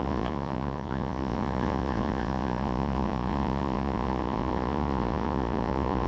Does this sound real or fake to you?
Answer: fake